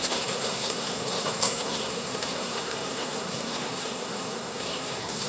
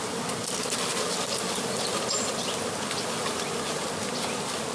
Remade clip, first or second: first